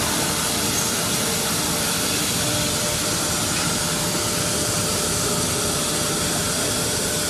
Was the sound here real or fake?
real